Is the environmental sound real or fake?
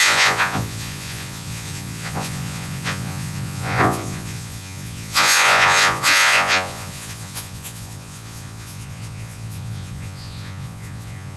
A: fake